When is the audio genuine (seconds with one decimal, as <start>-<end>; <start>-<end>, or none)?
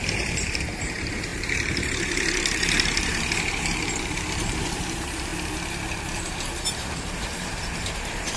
5.3-6.3